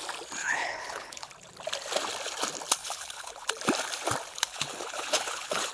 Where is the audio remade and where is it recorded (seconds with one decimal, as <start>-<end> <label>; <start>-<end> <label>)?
0.0-0.4 recorded; 0.4-1.3 remade; 1.3-2.8 recorded; 2.8-3.5 remade; 3.5-4.3 recorded; 4.3-5.7 remade

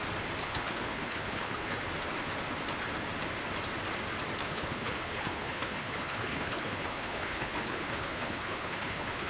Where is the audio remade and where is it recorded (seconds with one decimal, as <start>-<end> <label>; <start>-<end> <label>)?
0.0-0.4 recorded; 0.4-1.8 remade; 1.8-4.4 recorded; 4.4-9.3 remade

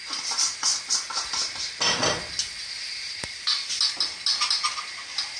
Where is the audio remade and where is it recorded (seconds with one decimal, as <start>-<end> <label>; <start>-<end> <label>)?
0.0-5.4 recorded

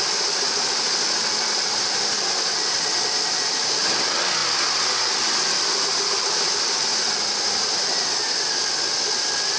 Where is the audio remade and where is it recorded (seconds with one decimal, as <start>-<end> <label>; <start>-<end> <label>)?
0.0-9.6 recorded

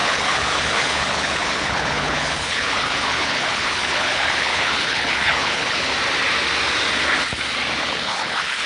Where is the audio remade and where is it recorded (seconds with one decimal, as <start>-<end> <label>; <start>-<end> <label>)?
0.0-5.9 remade; 5.9-7.8 recorded; 7.8-8.7 remade

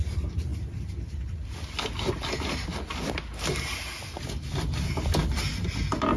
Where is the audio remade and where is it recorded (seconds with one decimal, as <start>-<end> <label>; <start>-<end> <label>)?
0.0-6.2 recorded

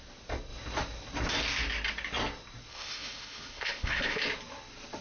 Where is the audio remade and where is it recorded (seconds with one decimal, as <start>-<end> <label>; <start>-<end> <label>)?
0.0-2.7 recorded; 2.7-4.2 remade; 4.2-5.0 recorded